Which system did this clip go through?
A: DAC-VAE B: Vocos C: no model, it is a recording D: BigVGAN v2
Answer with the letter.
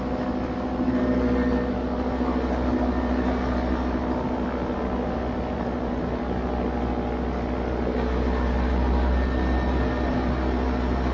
C